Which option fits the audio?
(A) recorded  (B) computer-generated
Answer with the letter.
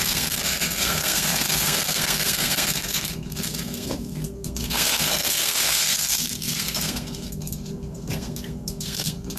B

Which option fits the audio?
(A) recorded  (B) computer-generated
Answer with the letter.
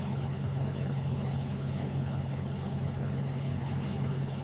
B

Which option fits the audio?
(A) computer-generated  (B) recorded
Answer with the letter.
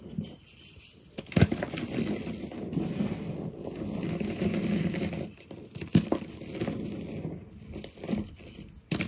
B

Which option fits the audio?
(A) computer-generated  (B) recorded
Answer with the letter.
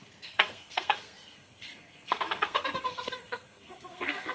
A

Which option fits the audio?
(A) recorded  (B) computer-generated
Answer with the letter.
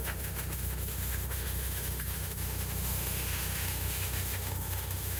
B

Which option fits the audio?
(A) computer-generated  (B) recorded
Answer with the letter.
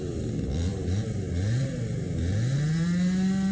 B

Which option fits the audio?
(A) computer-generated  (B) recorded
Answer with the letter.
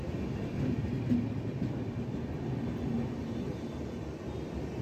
B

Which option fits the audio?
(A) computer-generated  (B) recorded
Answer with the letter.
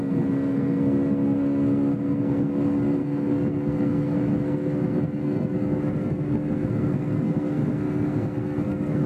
A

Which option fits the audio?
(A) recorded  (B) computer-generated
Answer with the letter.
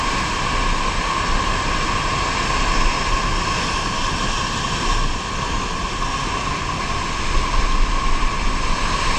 A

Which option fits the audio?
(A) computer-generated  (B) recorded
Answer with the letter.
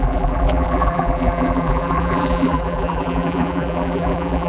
A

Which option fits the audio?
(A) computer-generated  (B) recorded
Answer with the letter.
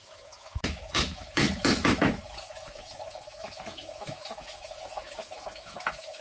A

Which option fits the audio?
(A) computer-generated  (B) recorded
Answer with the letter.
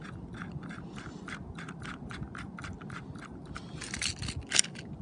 B